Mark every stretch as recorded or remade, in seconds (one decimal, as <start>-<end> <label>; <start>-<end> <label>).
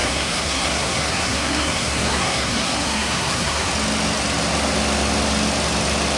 0.0-3.7 remade; 3.7-6.2 recorded